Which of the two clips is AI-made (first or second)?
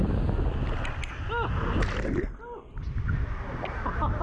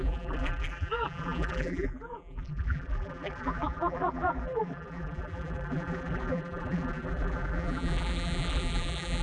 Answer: second